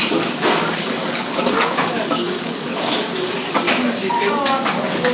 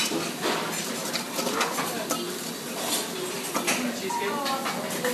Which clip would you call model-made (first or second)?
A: first